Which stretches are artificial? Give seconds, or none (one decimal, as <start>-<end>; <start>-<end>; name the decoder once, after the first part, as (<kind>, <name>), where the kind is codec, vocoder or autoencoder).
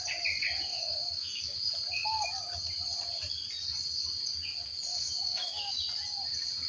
0.7-1.4 (autoencoder, DAC-VAE); 4.9-5.8